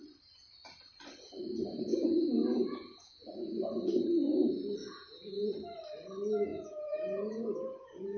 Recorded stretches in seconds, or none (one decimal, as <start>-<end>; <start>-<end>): 0.0-1.9; 3.7-4.8; 5.5-6.5